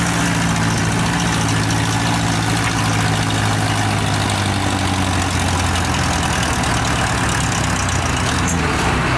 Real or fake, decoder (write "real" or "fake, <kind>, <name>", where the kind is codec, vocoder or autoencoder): real